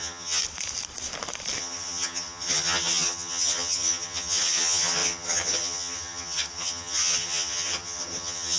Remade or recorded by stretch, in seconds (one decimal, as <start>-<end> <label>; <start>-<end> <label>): 0.0-0.4 remade; 0.4-1.6 recorded; 1.6-8.6 remade